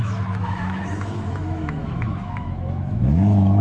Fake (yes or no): yes